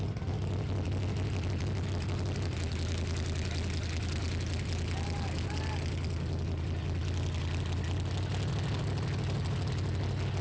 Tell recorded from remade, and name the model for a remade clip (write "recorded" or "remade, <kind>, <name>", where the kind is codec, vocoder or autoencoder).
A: recorded